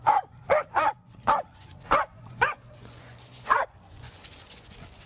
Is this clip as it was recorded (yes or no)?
no